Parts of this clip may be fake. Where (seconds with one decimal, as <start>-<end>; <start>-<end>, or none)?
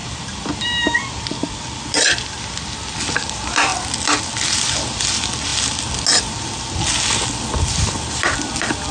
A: none